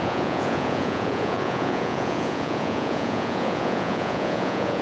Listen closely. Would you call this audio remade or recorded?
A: remade